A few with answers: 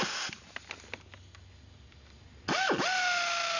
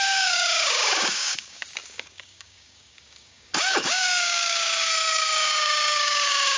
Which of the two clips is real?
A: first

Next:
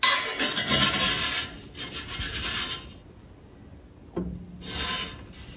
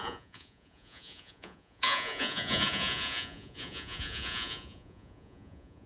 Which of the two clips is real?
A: first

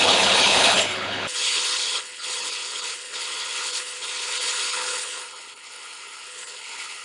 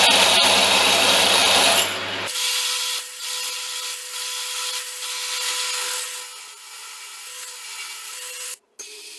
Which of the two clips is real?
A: second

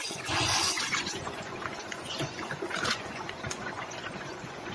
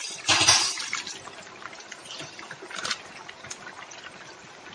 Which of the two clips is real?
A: second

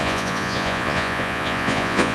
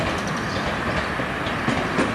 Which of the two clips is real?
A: second